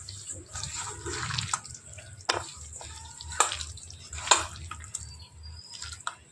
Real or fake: real